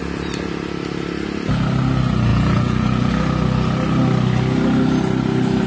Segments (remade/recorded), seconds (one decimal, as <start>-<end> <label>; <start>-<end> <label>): 0.0-2.3 recorded; 2.3-3.1 remade; 3.1-5.7 recorded